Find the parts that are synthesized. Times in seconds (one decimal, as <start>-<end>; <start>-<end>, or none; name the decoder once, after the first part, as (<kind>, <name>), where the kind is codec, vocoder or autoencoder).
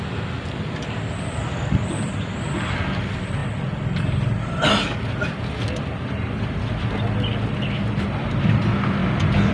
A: none